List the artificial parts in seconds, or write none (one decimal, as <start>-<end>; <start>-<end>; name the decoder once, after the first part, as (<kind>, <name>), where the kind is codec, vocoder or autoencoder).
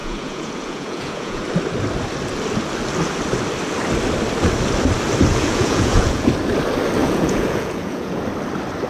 0.0-1.4 (vocoder, Vocos); 5.3-6.3; 7.0-8.2